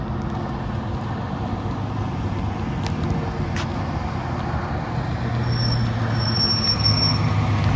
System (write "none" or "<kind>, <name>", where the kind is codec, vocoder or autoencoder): none